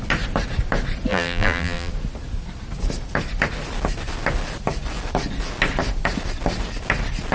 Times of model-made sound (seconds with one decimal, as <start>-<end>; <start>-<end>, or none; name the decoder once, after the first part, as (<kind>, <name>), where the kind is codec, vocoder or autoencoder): 1.1-1.9 (vocoder, BigVGAN v2)